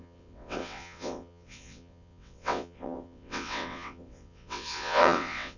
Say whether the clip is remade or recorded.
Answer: remade